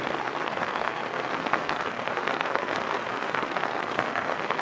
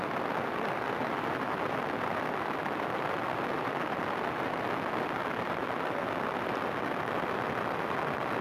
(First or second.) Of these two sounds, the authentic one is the second